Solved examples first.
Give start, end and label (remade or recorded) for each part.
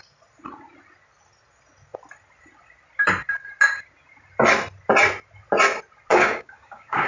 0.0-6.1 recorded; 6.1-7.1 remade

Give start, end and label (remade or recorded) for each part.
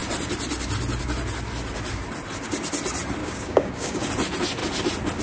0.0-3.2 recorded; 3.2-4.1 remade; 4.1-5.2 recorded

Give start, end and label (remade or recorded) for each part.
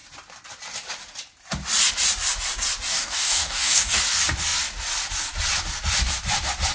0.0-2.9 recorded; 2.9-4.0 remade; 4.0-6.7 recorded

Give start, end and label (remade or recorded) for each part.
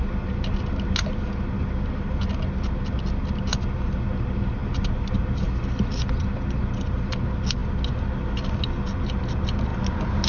0.0-10.3 recorded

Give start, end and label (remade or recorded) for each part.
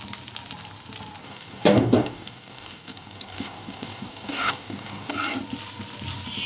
0.0-1.2 recorded; 1.2-5.1 remade; 5.1-6.5 recorded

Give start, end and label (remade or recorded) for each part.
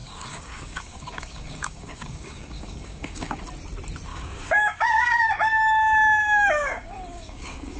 0.0-3.4 remade; 3.4-4.1 recorded; 4.1-7.8 remade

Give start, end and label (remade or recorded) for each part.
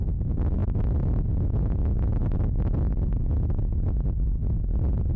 0.0-5.2 recorded